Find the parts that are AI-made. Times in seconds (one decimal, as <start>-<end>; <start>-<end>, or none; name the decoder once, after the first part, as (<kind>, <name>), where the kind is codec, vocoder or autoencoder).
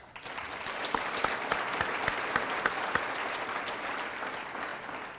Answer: 0.0-1.2 (vocoder, BigVGAN v2); 2.0-5.2